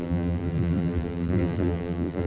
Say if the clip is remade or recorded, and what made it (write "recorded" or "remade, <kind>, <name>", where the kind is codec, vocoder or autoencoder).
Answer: remade, vocoder, BigVGAN v2